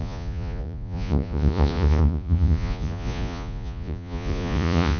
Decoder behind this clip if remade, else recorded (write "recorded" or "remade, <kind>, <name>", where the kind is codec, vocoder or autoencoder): remade, vocoder, Vocos